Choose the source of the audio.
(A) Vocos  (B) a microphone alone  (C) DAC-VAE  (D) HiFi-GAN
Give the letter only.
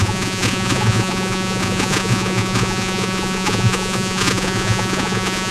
A